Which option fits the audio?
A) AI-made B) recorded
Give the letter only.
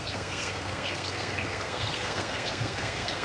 A